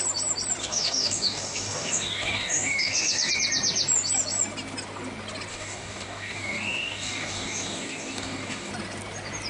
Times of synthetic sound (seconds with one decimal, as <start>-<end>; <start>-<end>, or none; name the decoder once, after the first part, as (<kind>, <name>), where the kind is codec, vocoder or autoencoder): 0.6-3.3 (codec, DAC); 5.5-8.7